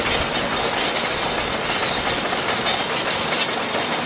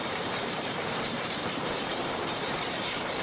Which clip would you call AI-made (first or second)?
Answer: second